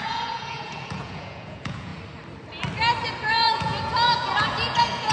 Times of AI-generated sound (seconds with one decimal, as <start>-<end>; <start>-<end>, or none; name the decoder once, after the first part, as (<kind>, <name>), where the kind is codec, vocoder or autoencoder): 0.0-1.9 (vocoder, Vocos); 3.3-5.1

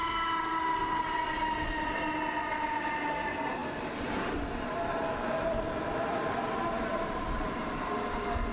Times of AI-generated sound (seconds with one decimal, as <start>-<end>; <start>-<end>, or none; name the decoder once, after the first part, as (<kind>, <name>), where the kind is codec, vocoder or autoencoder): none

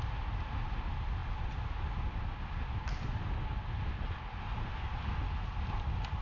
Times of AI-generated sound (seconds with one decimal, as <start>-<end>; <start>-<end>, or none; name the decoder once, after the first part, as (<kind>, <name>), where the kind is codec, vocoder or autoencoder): none

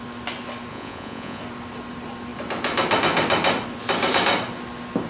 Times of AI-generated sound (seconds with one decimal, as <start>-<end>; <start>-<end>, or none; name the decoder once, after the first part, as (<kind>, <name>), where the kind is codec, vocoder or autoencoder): 0.7-1.4 (vocoder, Vocos)